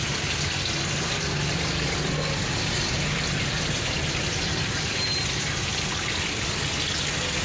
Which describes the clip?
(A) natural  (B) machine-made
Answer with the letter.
A